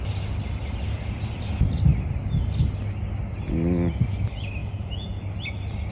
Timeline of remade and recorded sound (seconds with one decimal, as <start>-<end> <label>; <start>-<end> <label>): 0.0-4.6 recorded; 4.6-5.2 remade; 5.2-5.9 recorded

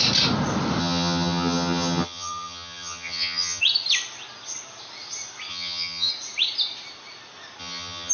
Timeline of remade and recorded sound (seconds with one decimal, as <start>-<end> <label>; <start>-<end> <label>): 0.0-0.8 recorded; 0.8-3.6 remade; 3.6-5.5 recorded; 5.5-6.1 remade; 6.1-7.6 recorded; 7.6-8.1 remade